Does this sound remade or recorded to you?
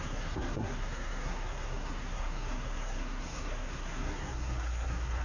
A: remade